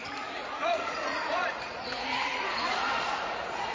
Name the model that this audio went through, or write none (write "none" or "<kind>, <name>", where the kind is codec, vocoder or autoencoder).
vocoder, Vocos